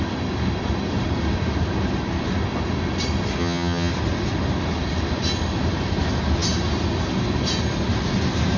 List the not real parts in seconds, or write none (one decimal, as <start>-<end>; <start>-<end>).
3.4-3.9